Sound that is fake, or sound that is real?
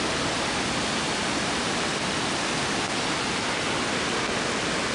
real